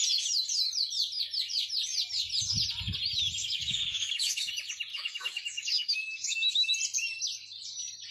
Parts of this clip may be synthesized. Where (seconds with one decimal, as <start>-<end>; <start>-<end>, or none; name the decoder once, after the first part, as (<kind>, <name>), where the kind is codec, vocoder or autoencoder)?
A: 3.4-4.5 (codec, DAC); 4.9-6.7